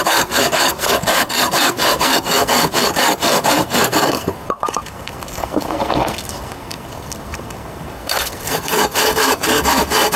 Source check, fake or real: fake